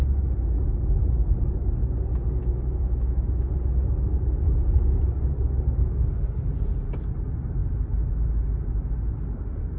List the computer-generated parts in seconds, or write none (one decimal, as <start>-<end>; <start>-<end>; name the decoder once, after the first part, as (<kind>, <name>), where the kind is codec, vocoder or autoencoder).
2.4-3.5 (autoencoder, DAC-VAE)